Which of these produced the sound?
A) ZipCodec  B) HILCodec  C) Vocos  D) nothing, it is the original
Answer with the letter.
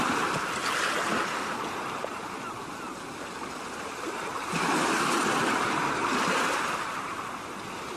D